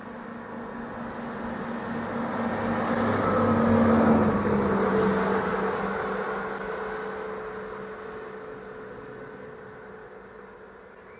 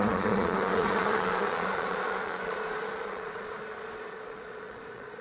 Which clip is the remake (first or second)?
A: second